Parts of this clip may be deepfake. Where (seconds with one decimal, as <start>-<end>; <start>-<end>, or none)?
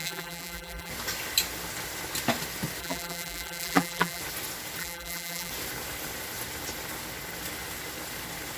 0.0-0.9; 2.8-4.2; 4.8-5.5